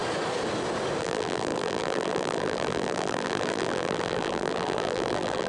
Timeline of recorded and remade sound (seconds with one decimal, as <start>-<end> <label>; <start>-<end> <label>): 0.0-1.0 recorded; 1.0-5.5 remade

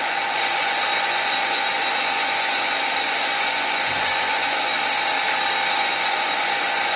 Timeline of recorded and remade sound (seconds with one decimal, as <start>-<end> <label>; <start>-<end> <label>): 0.0-4.7 remade; 4.7-5.8 recorded; 5.8-7.0 remade

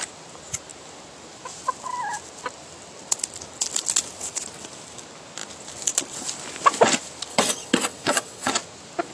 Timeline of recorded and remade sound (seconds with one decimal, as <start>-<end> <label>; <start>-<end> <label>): 0.0-7.3 recorded; 7.3-8.5 remade; 8.5-9.1 recorded

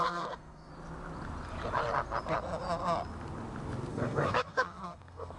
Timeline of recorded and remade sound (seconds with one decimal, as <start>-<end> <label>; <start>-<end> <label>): 0.0-0.7 remade; 0.7-3.9 recorded; 3.9-5.4 remade

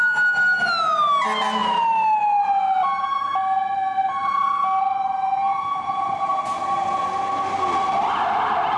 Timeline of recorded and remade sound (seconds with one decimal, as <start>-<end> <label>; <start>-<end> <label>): 0.0-8.8 recorded

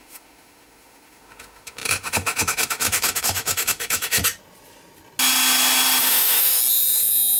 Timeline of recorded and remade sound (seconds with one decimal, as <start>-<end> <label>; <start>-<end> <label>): 0.0-4.2 remade; 4.2-6.0 recorded; 6.0-6.6 remade; 6.6-7.4 recorded

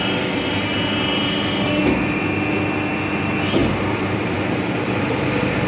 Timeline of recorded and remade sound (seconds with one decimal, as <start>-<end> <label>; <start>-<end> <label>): 0.0-3.6 recorded; 3.6-5.7 remade